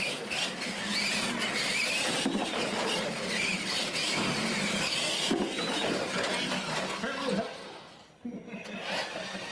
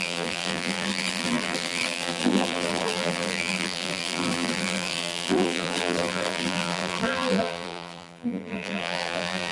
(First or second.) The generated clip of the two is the second